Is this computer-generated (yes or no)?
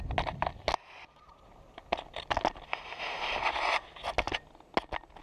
no